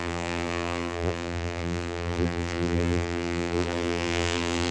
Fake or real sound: fake